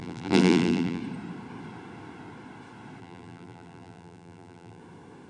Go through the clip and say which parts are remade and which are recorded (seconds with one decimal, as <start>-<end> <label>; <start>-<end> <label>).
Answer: 0.0-1.0 remade; 1.0-3.0 recorded; 3.0-4.8 remade; 4.8-5.3 recorded